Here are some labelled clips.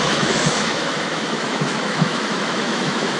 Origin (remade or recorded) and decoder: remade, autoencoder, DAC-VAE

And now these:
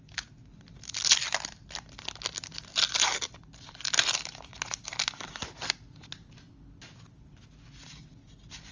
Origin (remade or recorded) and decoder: recorded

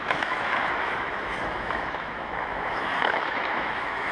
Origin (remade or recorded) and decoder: remade, autoencoder, DAC-VAE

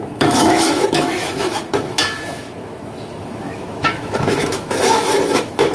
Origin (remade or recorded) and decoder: remade, autoencoder, DAC-VAE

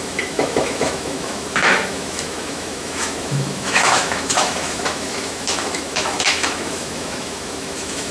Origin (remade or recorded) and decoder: remade, autoencoder, DAC-VAE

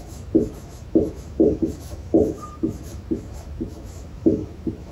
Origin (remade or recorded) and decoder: remade, autoencoder, DAC-VAE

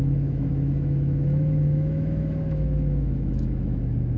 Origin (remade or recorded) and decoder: remade, autoencoder, DAC-VAE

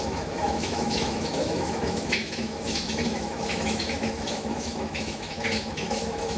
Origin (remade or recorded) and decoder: remade, autoencoder, DAC-VAE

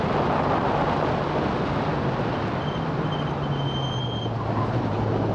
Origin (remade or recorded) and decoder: recorded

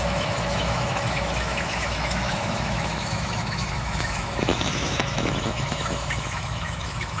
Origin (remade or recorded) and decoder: remade, autoencoder, DAC-VAE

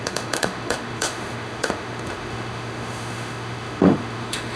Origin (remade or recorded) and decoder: remade, autoencoder, DAC-VAE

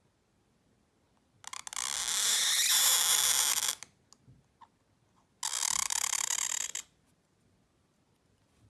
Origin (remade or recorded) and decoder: recorded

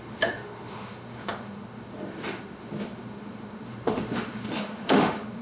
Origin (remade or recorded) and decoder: remade, autoencoder, DAC-VAE